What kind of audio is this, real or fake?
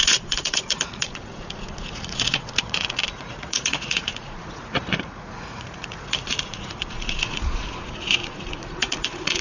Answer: fake